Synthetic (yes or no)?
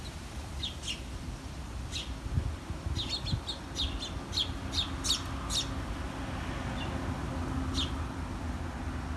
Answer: no